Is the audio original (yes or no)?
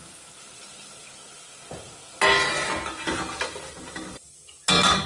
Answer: yes